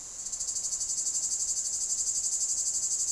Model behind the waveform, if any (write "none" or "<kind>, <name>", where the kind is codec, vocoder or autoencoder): none